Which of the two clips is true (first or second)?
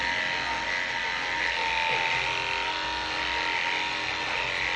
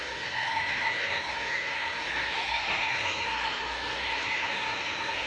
first